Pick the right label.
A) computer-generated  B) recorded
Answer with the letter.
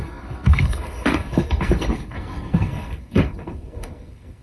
A